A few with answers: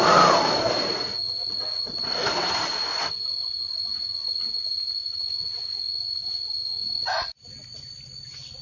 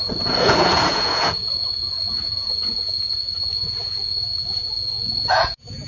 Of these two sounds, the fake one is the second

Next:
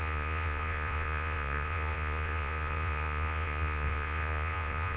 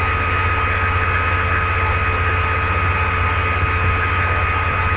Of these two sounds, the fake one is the first